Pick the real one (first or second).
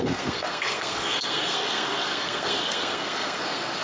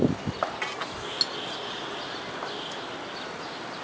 second